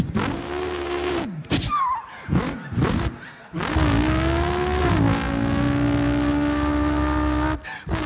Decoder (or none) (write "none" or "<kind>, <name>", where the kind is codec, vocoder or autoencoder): none